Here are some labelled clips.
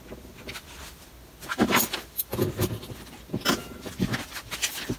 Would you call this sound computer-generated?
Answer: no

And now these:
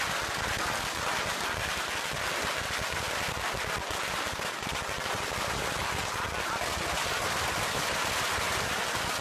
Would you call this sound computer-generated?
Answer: no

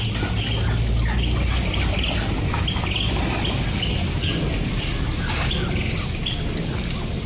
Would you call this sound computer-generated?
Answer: no